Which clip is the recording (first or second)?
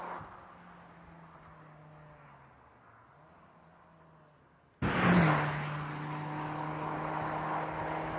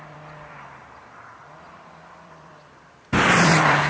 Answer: first